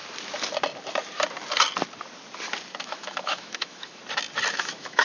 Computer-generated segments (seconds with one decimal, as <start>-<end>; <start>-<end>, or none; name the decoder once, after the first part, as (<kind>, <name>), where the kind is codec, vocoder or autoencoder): 2.7-4.0 (autoencoder, DAC-VAE); 4.5-5.0